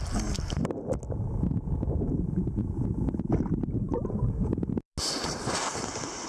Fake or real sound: real